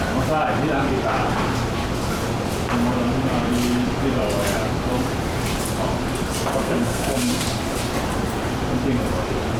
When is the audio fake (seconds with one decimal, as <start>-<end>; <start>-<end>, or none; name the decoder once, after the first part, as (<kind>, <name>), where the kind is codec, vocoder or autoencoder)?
6.5-7.4 (codec, SNAC)